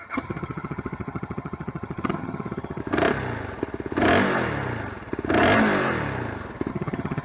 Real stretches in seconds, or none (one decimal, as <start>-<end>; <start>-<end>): 2.8-6.7